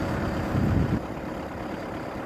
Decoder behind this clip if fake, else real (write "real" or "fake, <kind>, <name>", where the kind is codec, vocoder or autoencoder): fake, vocoder, BigVGAN v2